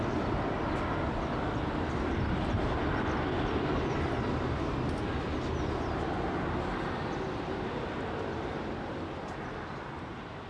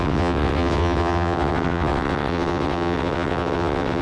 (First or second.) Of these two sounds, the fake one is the second